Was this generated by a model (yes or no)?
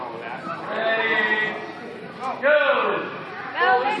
no